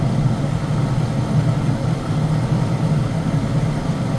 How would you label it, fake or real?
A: real